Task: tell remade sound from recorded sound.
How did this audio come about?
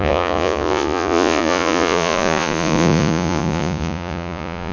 remade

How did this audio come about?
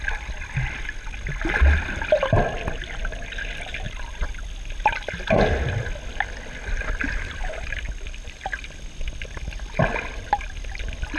recorded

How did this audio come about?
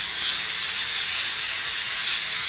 remade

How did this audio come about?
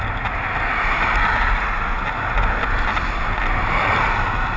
recorded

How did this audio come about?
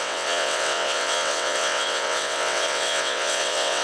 remade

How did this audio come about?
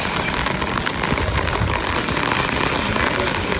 recorded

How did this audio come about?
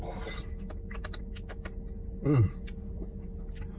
recorded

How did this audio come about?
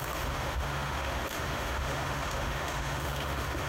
remade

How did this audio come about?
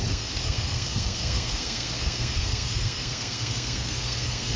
remade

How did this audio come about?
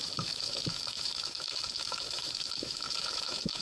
remade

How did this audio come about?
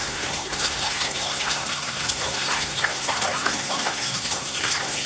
remade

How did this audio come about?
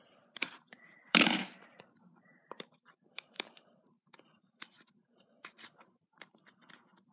remade